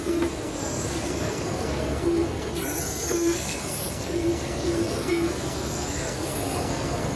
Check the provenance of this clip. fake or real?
fake